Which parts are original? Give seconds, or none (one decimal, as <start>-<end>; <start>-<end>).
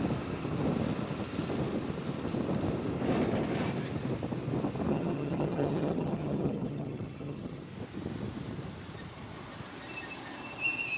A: 0.0-4.9; 7.6-11.0